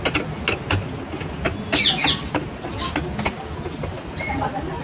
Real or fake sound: real